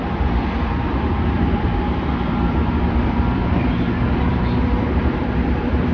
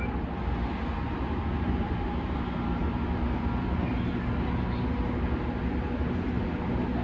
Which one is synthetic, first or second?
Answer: first